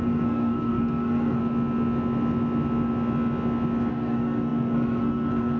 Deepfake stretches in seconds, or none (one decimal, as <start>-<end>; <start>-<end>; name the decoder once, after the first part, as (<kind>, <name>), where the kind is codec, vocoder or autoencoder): 0.0-1.4 (codec, SNAC); 3.9-5.6